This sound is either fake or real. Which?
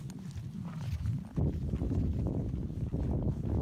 real